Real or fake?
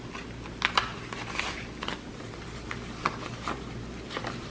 real